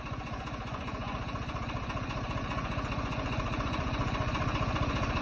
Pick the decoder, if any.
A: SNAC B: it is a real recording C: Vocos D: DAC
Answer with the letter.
C